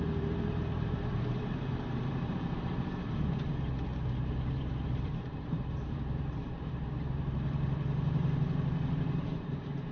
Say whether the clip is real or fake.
fake